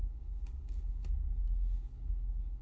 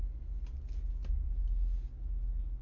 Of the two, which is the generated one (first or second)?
first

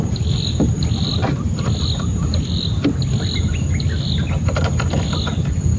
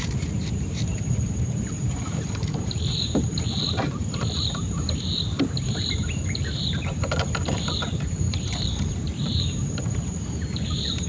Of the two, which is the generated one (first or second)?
second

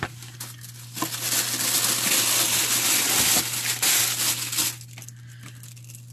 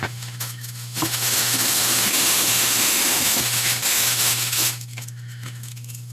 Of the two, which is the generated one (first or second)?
second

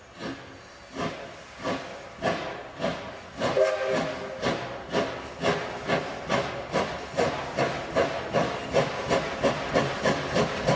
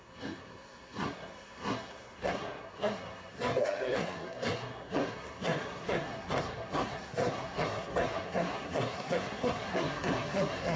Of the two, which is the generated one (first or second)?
second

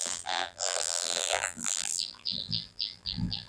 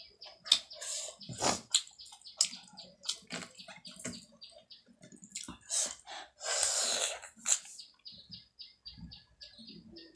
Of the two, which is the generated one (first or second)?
first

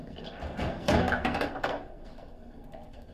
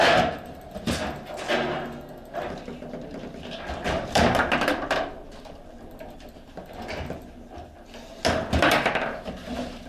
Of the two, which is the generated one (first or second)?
first